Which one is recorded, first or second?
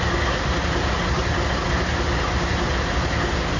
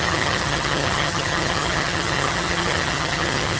first